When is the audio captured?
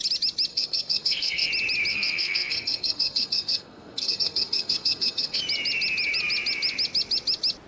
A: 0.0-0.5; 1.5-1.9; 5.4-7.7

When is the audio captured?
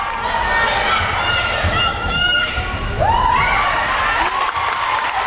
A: 0.0-1.9; 2.5-5.3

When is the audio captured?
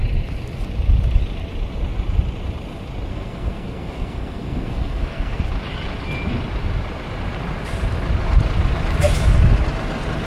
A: 0.0-3.1; 5.4-10.3